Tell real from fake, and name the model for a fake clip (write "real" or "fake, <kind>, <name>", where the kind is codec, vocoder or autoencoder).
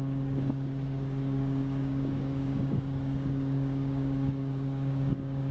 fake, codec, DAC